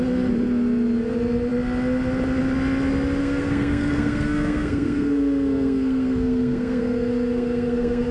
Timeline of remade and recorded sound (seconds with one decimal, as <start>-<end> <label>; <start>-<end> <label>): 0.0-3.2 recorded; 3.2-8.1 remade